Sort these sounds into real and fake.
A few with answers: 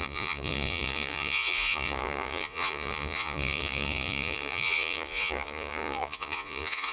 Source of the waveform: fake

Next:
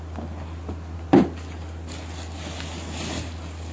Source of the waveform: real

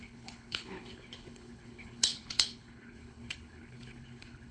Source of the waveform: fake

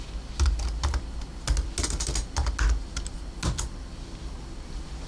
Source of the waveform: real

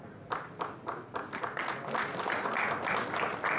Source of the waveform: real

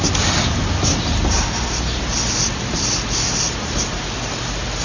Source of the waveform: real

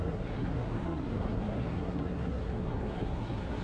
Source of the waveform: fake